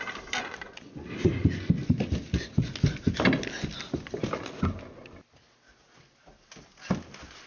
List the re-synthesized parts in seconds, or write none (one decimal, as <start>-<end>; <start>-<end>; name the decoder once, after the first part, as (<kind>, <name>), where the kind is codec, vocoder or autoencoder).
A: 0.4-1.3 (vocoder, Vocos)